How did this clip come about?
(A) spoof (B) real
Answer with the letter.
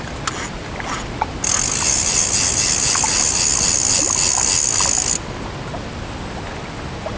B